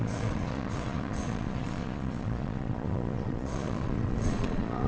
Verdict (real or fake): fake